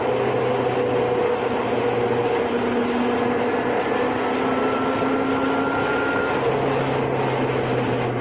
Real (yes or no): yes